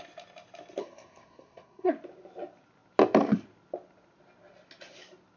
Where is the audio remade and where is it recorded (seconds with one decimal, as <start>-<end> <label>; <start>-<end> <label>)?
0.0-0.8 recorded; 0.8-1.9 remade; 1.9-5.4 recorded